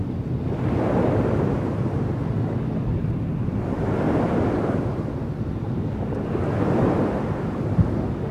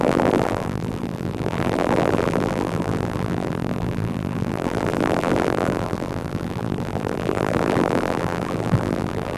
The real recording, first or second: first